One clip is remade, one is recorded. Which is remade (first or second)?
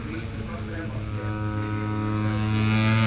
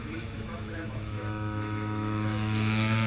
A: second